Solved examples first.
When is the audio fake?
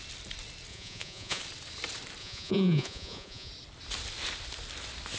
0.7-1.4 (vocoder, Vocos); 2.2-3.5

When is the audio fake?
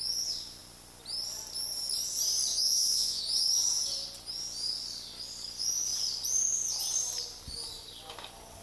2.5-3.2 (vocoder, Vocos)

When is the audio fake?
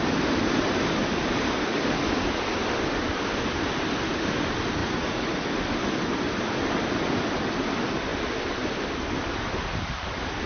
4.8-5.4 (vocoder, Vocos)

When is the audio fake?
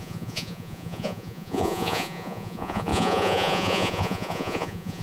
0.0-5.0 (vocoder, Vocos)